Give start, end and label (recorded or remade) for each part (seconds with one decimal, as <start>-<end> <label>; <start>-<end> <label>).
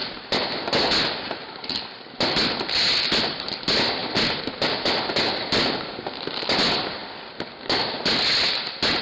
0.0-9.0 recorded